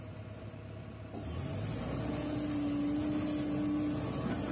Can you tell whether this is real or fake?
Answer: real